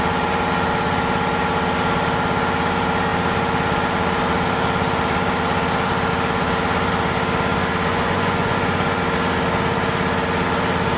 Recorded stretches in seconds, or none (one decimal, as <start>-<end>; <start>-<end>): 0.0-7.9; 9.0-11.0